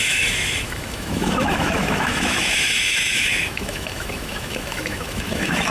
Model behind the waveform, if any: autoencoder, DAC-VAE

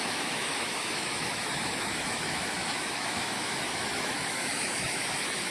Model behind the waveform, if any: autoencoder, DAC-VAE